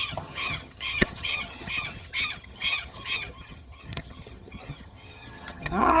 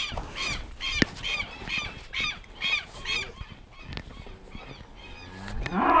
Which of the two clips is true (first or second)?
second